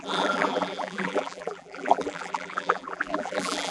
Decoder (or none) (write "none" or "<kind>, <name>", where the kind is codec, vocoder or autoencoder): vocoder, BigVGAN v2